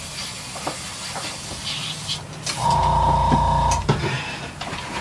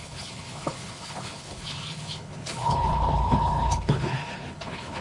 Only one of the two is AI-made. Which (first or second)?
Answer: second